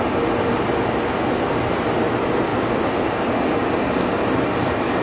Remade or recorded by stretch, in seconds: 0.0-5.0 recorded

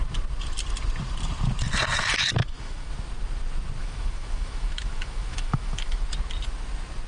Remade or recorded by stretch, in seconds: 0.0-2.4 recorded; 2.4-2.9 remade; 2.9-3.8 recorded; 3.8-6.0 remade; 6.0-7.1 recorded

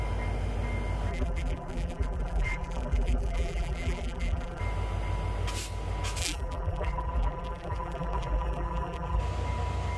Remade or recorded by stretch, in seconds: 0.0-1.1 recorded; 1.1-4.6 remade; 4.6-6.2 recorded; 6.2-9.2 remade; 9.2-10.0 recorded

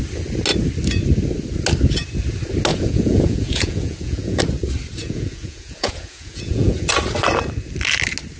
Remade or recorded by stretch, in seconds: 0.0-2.7 recorded; 2.7-4.4 remade; 4.4-5.0 recorded; 5.0-6.8 remade; 6.8-8.4 recorded

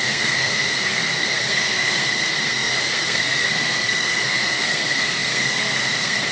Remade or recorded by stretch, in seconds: 0.0-6.3 remade

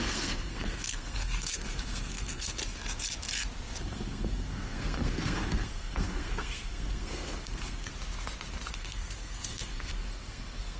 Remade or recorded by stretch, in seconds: 0.0-2.6 remade; 2.6-3.8 recorded; 3.8-7.9 remade; 7.9-8.7 recorded; 8.7-10.8 remade